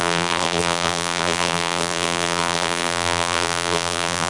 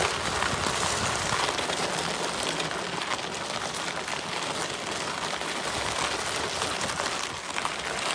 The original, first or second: second